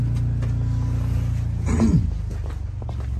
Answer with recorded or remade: recorded